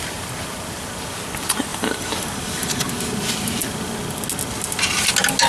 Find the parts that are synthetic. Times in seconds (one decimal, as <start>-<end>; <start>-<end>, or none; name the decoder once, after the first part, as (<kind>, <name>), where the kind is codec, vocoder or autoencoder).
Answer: 1.7-2.9 (vocoder, BigVGAN v2)